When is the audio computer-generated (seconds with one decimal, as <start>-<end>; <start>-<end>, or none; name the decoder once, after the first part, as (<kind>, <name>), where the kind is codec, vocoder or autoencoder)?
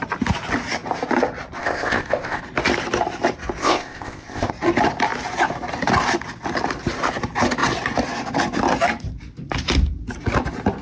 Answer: 1.6-2.4 (codec, ZipCodec); 3.6-4.5